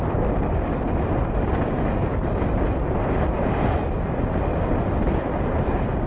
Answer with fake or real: real